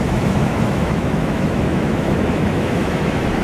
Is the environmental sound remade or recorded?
remade